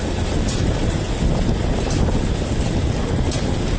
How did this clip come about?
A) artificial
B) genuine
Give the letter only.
B